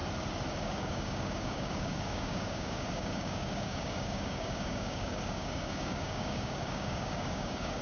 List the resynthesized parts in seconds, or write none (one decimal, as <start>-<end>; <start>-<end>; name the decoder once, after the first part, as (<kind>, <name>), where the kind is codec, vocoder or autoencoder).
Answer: 0.6-7.8 (codec, DAC)